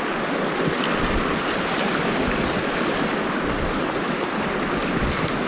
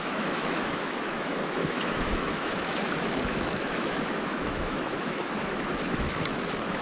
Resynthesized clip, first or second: second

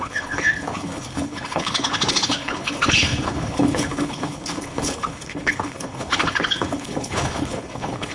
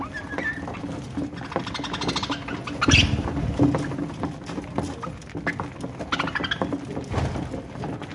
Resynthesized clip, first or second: first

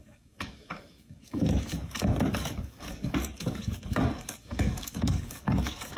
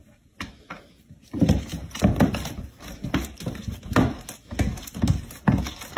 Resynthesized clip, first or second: first